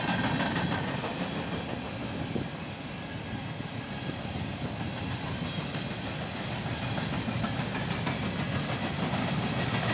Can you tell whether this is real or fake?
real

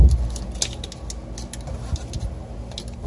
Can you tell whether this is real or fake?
real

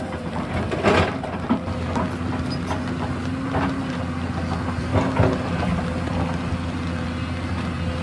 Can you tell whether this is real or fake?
real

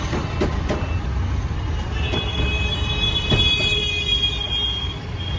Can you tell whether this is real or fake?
real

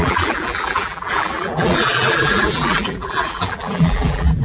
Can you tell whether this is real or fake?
fake